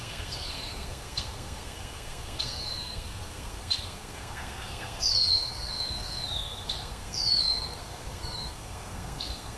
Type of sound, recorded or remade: remade